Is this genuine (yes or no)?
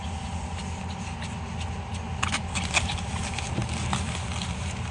yes